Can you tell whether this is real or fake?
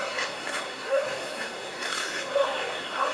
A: fake